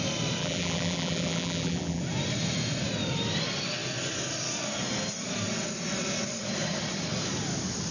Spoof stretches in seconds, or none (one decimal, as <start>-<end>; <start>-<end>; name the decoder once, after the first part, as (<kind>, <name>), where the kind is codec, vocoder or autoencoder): 0.4-2.0 (vocoder, BigVGAN v2)